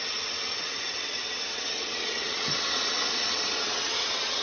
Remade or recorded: remade